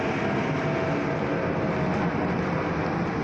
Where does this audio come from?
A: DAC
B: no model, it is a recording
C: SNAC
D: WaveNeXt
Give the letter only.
B